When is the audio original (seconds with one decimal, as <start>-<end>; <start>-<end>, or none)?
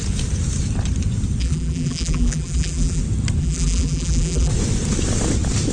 0.0-1.4; 3.0-3.4; 4.5-5.7